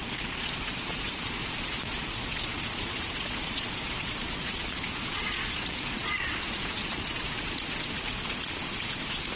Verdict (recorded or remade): remade